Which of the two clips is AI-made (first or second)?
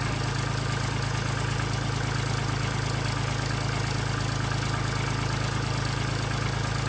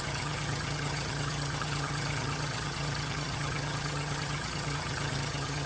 second